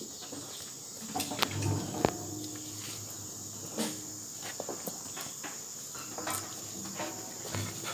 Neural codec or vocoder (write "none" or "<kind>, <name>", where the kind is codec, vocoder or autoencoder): none